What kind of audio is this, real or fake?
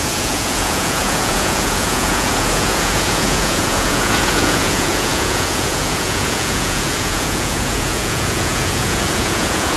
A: fake